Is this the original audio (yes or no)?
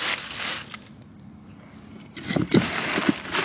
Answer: yes